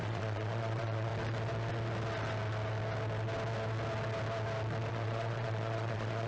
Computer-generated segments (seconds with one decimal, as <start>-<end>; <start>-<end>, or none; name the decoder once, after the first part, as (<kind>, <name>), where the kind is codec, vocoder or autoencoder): 0.0-1.1 (vocoder, Vocos); 4.9-6.3